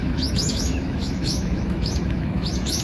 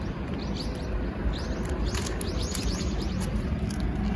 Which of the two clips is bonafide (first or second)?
second